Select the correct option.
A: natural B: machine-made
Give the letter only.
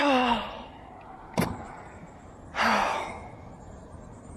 A